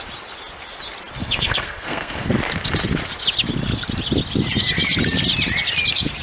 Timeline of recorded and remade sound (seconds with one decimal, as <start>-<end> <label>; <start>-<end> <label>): 0.0-1.2 recorded; 1.2-2.3 remade; 2.3-6.2 recorded